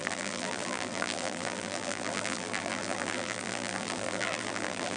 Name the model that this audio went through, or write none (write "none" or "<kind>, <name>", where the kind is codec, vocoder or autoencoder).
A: vocoder, BigVGAN v2